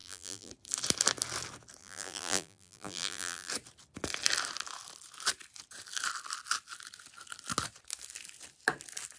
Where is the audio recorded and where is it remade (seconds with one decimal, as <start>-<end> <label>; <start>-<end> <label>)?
0.0-0.5 remade; 0.5-1.8 recorded; 1.8-3.5 remade; 3.5-9.2 recorded